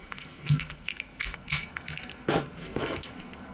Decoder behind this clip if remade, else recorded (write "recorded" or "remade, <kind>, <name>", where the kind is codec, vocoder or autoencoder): remade, codec, SNAC